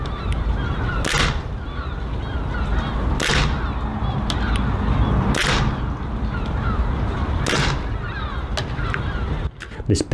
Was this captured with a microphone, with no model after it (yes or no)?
yes